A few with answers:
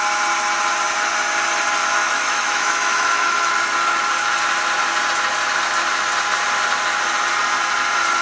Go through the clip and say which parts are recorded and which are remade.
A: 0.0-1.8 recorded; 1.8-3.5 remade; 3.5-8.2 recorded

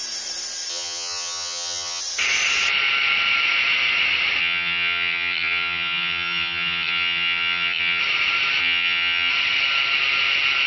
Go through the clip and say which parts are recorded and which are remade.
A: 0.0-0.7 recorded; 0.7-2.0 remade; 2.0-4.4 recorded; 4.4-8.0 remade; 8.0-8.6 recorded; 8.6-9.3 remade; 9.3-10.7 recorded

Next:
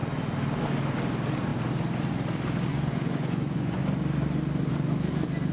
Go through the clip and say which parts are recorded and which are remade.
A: 0.0-2.7 recorded; 2.7-3.8 remade; 3.8-5.5 recorded

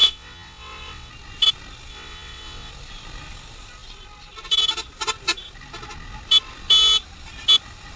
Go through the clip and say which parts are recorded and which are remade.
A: 0.0-1.1 remade; 1.1-1.9 recorded; 1.9-2.7 remade; 2.7-8.0 recorded

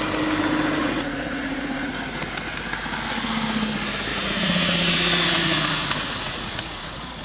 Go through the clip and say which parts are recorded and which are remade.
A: 0.0-0.8 recorded; 0.8-1.9 remade; 1.9-4.1 recorded; 4.1-7.2 remade

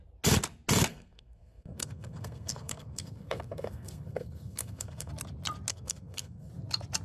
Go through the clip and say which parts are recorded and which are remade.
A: 0.0-0.9 recorded; 0.9-5.1 remade; 5.1-5.7 recorded; 5.7-6.5 remade; 6.5-7.0 recorded